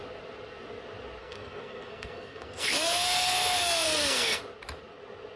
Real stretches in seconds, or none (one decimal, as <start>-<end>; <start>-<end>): 0.0-1.2; 4.4-5.4